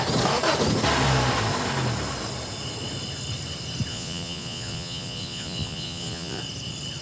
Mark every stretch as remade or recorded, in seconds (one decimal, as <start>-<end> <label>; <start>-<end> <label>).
0.0-3.9 recorded; 3.9-6.4 remade; 6.4-7.0 recorded